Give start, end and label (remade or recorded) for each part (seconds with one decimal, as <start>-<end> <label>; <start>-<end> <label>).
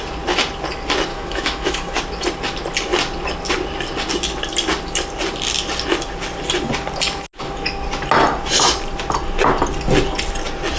0.0-1.1 recorded; 1.1-2.0 remade; 2.0-10.8 recorded